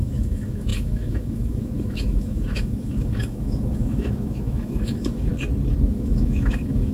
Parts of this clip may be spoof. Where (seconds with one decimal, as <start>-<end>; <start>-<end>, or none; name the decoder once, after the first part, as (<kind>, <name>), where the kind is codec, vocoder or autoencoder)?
0.0-5.3 (autoencoder, DAC-VAE); 5.9-6.9